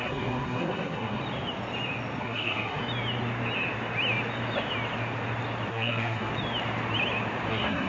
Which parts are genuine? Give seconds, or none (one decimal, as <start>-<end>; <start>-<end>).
1.2-2.2; 2.8-5.7; 6.3-7.5